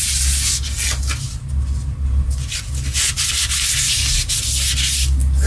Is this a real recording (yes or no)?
yes